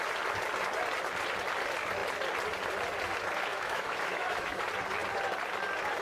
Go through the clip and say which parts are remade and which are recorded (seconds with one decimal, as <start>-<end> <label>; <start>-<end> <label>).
0.0-3.5 recorded; 3.5-4.6 remade; 4.6-6.0 recorded